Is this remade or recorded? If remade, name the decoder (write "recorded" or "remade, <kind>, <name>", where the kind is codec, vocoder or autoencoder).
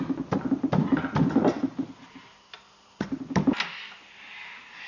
recorded